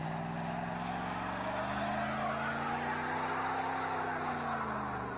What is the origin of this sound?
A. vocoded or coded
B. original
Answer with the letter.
B